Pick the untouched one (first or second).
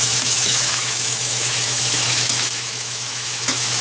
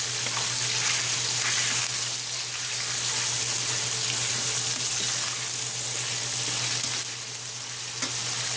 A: second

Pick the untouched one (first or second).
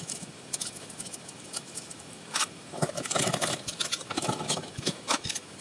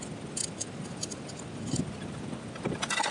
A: second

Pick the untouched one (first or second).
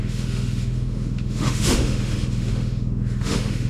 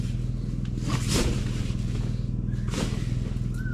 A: second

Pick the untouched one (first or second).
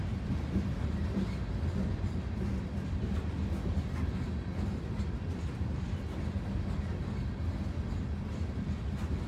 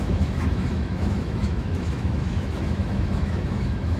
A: first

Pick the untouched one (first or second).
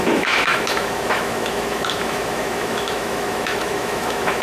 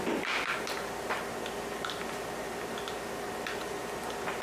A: second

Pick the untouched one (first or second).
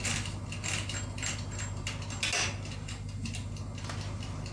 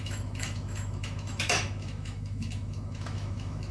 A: first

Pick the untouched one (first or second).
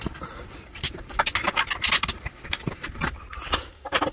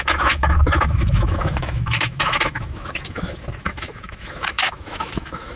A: first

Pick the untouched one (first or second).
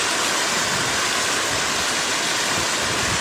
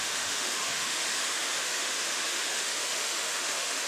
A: first